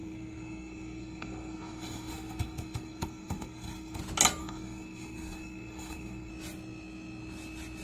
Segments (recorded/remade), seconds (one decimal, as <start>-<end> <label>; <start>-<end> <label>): 0.0-4.0 remade; 4.0-4.4 recorded; 4.4-6.3 remade; 6.3-7.8 recorded